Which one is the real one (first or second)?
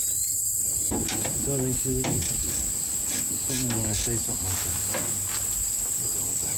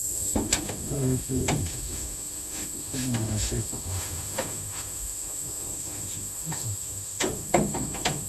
first